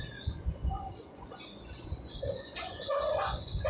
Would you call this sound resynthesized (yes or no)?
yes